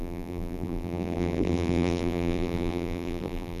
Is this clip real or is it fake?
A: fake